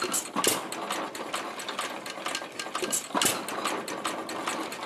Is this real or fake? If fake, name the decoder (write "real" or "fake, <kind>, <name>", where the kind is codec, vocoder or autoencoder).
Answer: real